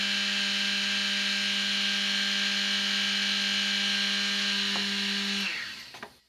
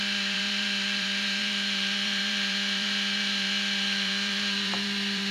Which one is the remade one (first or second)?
second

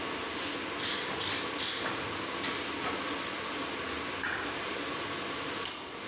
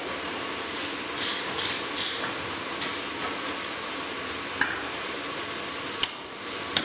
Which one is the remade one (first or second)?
first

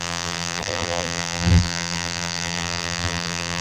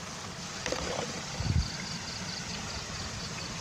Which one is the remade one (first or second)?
first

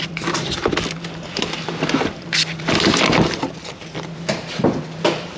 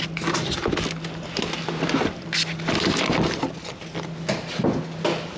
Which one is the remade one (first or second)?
first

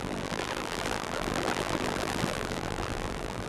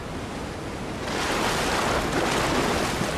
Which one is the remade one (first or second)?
first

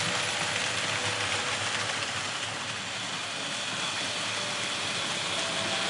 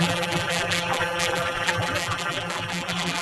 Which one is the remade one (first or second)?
second